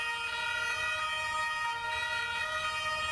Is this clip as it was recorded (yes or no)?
yes